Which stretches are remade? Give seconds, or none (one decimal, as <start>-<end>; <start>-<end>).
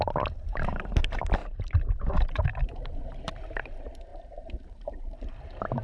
1.4-3.4; 4.1-5.0